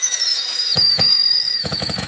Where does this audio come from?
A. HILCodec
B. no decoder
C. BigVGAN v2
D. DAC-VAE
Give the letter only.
D